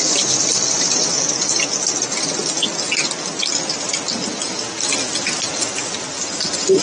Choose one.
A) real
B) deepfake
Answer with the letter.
A